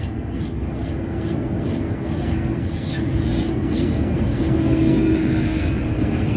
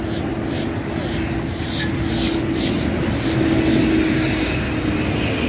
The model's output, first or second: first